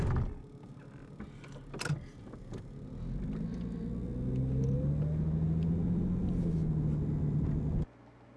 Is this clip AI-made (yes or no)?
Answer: no